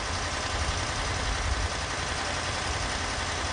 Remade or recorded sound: recorded